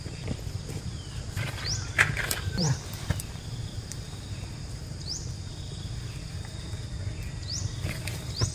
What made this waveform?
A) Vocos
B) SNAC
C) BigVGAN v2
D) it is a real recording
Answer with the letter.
C